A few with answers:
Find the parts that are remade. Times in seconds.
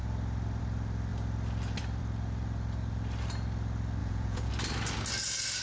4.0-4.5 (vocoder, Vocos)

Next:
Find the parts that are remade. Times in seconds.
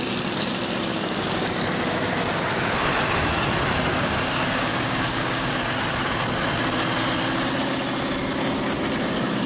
0.9-1.5 (codec, DAC); 3.9-5.5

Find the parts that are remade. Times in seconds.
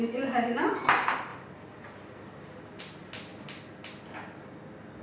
none